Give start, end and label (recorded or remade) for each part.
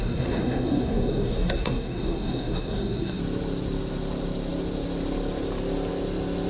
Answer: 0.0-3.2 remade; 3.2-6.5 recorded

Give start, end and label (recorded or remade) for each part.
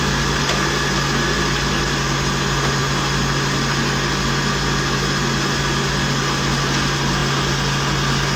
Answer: 0.0-8.4 recorded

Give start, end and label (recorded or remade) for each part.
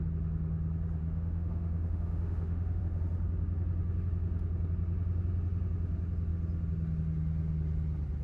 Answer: 0.0-1.0 recorded; 1.0-2.8 remade; 2.8-8.2 recorded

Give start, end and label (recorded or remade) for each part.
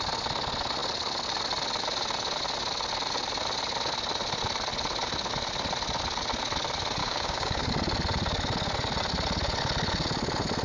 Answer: 0.0-7.0 recorded; 7.0-7.7 remade; 7.7-10.6 recorded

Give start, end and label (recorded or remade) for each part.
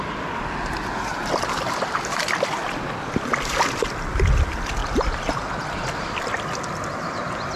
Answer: 0.0-1.1 recorded; 1.1-2.2 remade; 2.2-7.6 recorded